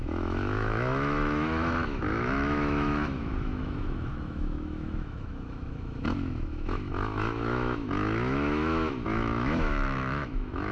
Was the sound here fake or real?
fake